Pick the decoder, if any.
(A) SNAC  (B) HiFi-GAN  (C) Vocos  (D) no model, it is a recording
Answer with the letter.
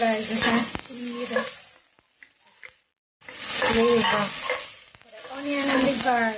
D